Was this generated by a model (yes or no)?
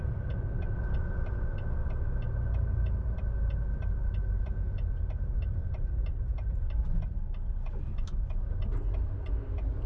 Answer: no